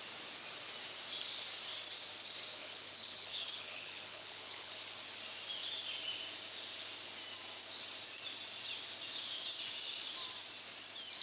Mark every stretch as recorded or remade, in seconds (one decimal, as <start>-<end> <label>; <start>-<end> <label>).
0.0-2.6 recorded; 2.6-4.7 remade; 4.7-11.2 recorded